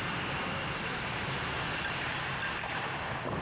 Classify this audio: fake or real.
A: real